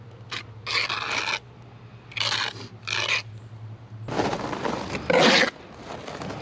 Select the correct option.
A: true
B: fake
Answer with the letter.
A